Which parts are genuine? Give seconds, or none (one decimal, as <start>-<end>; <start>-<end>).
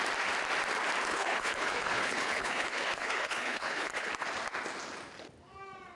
0.0-1.1; 4.1-6.0